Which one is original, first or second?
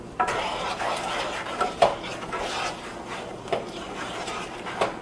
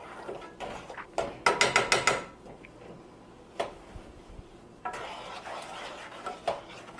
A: second